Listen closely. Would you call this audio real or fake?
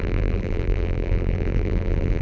fake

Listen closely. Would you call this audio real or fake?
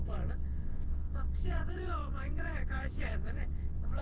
fake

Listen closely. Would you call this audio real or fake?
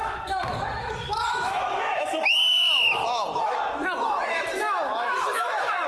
fake